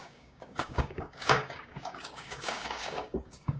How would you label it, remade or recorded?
remade